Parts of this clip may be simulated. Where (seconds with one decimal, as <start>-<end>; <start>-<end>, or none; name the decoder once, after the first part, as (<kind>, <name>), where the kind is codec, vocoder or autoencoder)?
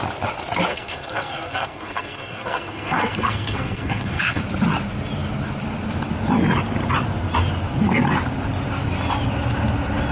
0.7-4.4 (codec, SNAC)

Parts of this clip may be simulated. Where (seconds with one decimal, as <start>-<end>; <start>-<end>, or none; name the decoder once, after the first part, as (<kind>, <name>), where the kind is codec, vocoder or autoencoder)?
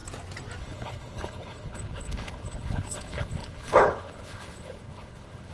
0.6-5.5 (codec, HILCodec)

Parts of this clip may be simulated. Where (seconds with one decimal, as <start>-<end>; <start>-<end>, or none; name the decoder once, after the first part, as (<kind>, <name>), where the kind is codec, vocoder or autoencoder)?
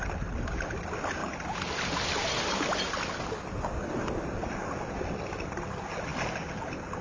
1.2-3.9 (vocoder, BigVGAN v2)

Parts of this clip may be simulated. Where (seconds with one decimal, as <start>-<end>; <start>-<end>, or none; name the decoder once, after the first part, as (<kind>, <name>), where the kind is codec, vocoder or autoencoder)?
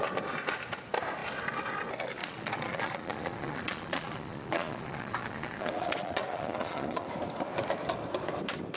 2.2-7.1 (vocoder, Vocos)